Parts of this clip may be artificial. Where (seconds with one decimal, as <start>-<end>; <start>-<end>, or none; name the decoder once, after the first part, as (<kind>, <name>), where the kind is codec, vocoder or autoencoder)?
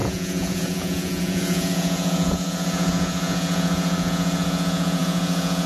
0.0-5.7 (vocoder, Vocos)